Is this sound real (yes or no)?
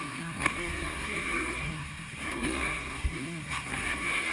no